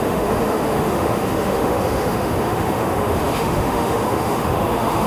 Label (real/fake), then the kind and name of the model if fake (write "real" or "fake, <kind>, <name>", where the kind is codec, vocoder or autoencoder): fake, autoencoder, DAC-VAE